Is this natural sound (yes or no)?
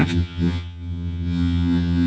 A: no